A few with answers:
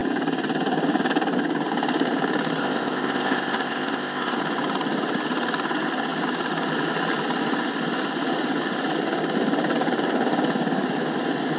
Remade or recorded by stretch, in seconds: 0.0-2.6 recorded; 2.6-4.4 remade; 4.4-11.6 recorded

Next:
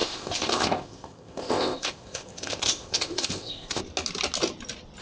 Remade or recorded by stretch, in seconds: 0.0-3.8 remade; 3.8-5.0 recorded

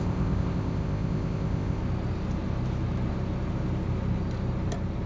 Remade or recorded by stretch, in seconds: 0.0-1.8 remade; 1.8-5.1 recorded

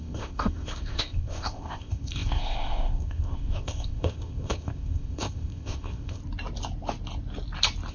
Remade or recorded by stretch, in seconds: 0.0-6.2 remade; 6.2-7.9 recorded

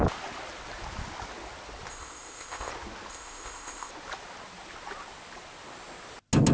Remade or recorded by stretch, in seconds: 0.0-1.9 recorded; 1.9-2.7 remade; 2.7-3.1 recorded; 3.1-3.9 remade; 3.9-6.5 recorded

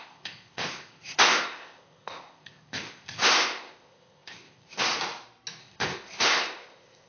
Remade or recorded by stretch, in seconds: 0.0-4.8 remade; 4.8-5.6 recorded; 5.6-7.1 remade

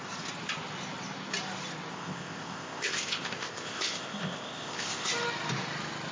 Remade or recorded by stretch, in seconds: 0.0-1.9 recorded; 1.9-5.1 remade; 5.1-6.1 recorded

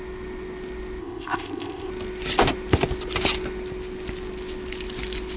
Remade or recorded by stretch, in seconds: 0.0-1.0 recorded; 1.0-1.9 remade; 1.9-5.4 recorded